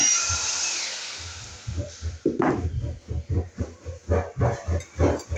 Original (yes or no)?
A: yes